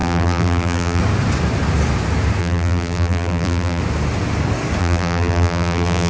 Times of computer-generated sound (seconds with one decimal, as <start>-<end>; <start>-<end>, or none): 0.0-1.0; 2.4-3.8; 4.8-6.1